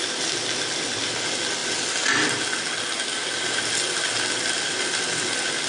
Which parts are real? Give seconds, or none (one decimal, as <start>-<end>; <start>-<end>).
0.0-5.7